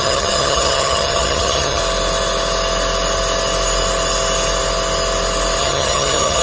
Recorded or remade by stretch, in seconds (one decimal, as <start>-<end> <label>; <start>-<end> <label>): 0.0-1.8 remade; 1.8-5.6 recorded; 5.6-6.4 remade